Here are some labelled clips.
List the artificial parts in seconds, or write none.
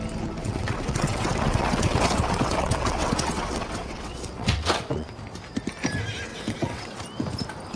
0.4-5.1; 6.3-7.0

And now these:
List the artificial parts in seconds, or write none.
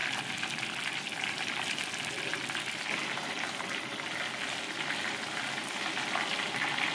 none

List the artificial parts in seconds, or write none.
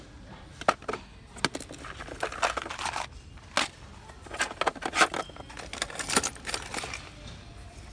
none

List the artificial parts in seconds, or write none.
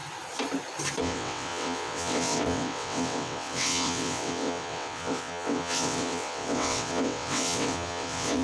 1.0-8.4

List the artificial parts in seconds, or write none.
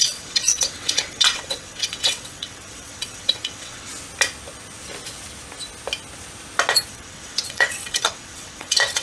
0.0-3.9; 6.9-9.0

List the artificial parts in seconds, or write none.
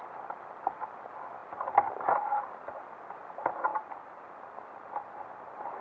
none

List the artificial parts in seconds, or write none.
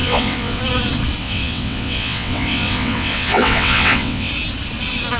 0.0-0.6; 1.2-4.3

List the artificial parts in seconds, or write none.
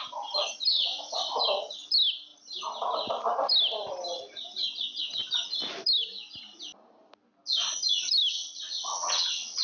0.7-1.4; 8.3-9.6